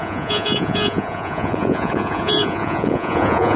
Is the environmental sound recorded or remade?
remade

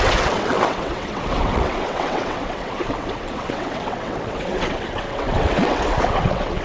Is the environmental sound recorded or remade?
remade